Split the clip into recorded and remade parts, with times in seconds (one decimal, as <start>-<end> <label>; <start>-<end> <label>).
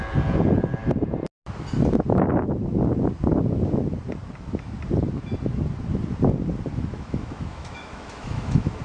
0.0-6.9 recorded; 6.9-8.8 remade